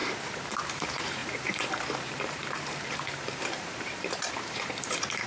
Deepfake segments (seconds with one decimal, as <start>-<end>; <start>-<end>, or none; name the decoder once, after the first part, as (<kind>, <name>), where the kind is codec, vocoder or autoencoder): 0.6-5.3 (vocoder, BigVGAN v2)